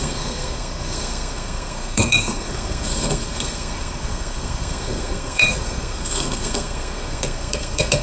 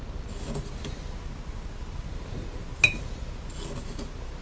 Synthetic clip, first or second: first